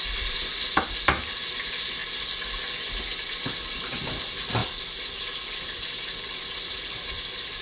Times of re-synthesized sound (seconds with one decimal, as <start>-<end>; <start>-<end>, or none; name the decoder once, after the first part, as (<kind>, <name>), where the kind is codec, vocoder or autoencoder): none